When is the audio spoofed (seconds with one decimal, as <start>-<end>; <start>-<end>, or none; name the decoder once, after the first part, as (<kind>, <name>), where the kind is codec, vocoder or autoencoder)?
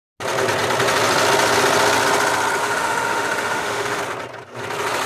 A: 2.6-4.0 (autoencoder, DAC-VAE)